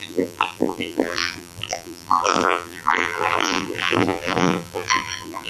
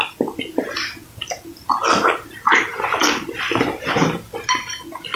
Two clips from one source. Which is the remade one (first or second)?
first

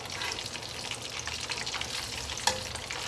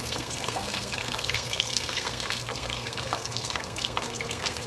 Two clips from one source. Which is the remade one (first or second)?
second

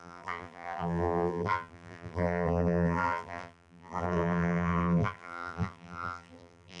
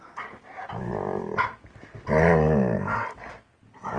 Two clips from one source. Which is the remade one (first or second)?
first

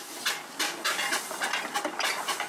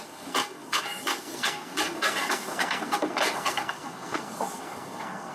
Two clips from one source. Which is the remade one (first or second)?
second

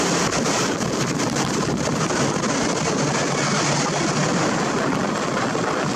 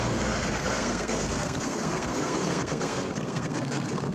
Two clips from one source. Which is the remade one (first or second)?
second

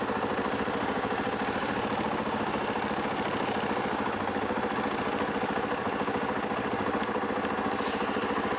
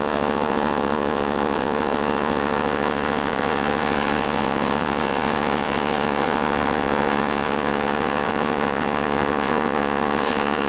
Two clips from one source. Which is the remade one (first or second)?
second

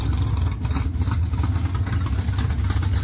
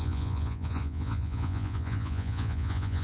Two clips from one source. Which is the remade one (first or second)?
second